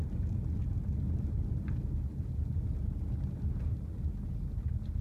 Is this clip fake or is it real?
real